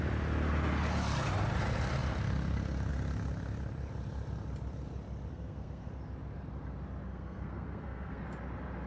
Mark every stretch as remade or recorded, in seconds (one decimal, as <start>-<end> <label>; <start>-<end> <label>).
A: 0.0-5.3 recorded; 5.3-5.9 remade; 5.9-7.1 recorded; 7.1-8.2 remade; 8.2-8.9 recorded